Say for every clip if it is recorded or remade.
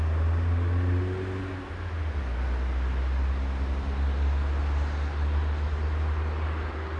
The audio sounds recorded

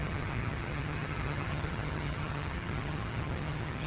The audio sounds remade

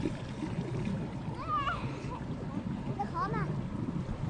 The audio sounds recorded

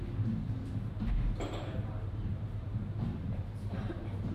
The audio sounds remade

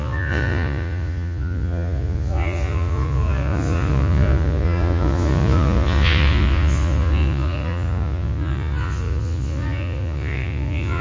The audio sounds remade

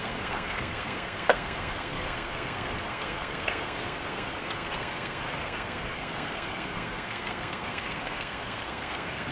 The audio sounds remade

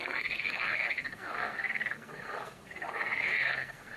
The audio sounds remade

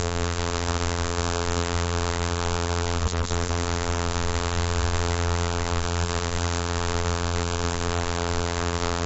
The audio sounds remade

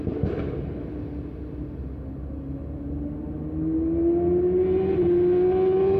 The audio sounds recorded